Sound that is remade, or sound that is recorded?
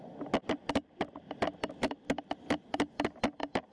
recorded